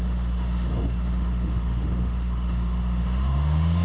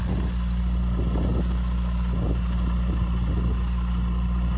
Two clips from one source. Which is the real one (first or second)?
second